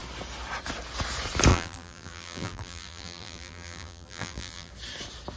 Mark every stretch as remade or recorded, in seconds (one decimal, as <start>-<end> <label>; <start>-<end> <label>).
0.0-1.5 recorded; 1.5-4.7 remade; 4.7-5.4 recorded